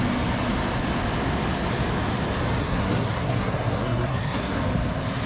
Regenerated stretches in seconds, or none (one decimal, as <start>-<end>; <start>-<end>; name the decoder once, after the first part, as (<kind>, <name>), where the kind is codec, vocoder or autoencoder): 2.6-4.6 (codec, SNAC)